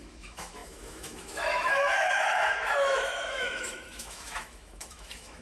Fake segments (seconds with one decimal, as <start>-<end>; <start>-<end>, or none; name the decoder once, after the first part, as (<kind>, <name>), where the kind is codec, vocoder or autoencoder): 0.0-5.4 (autoencoder, DAC-VAE)